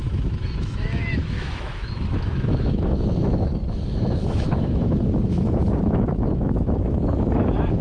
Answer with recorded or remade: remade